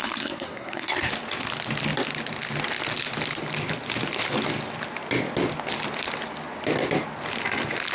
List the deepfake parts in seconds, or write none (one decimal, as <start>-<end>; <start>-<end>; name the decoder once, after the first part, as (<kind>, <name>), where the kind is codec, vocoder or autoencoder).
0.0-1.1 (codec, SNAC)